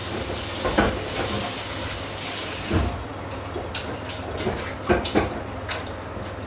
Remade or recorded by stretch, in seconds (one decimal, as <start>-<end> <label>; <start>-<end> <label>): 0.0-6.5 recorded